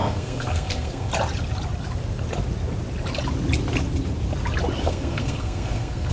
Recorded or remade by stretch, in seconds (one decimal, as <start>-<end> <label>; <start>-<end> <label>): 0.0-1.1 remade; 1.1-4.8 recorded; 4.8-6.1 remade

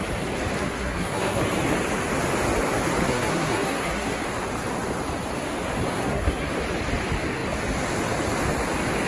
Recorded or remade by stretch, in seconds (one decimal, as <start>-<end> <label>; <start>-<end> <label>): 0.0-0.6 recorded; 0.6-1.4 remade; 1.4-3.0 recorded; 3.0-4.2 remade; 4.2-5.9 recorded; 5.9-6.5 remade; 6.5-9.1 recorded

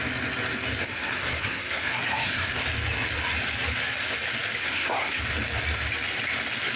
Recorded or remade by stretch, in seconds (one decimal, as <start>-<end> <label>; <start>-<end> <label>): 0.0-0.8 recorded; 0.8-2.5 remade; 2.5-4.6 recorded; 4.6-5.2 remade; 5.2-6.8 recorded

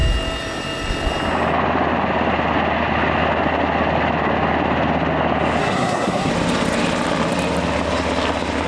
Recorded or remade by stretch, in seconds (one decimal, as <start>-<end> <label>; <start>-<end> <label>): 0.0-5.6 recorded; 5.6-6.3 remade; 6.3-8.7 recorded

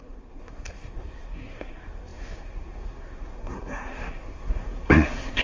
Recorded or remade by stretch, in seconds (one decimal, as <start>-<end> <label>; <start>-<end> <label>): 0.0-5.4 remade

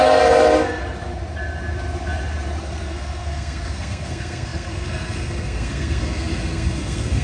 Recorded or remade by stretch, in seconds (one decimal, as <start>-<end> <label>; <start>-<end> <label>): 0.0-0.8 remade; 0.8-2.6 recorded; 2.6-7.2 remade

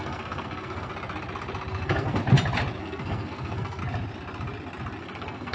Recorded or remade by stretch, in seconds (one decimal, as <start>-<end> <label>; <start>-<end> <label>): 0.0-0.9 remade; 0.9-1.7 recorded; 1.7-2.2 remade; 2.2-2.8 recorded; 2.8-3.8 remade; 3.8-5.0 recorded; 5.0-5.5 remade

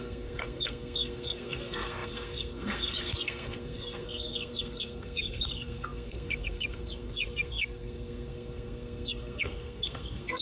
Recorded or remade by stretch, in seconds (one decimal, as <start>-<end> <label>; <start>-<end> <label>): 0.0-10.4 remade